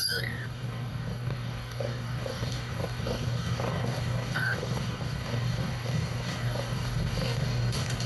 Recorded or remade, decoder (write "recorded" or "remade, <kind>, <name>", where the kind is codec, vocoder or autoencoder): remade, codec, DAC